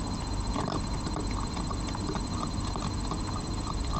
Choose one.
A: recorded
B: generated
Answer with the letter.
A